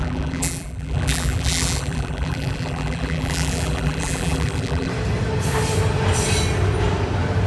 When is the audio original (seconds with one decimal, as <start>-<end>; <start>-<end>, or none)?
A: 4.9-7.5